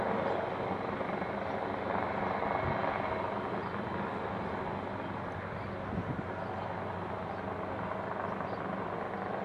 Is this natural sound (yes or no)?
yes